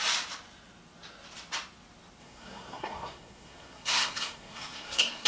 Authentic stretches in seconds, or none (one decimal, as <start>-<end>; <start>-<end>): 0.0-2.2